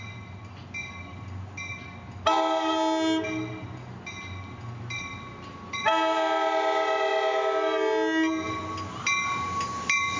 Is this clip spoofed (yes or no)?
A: no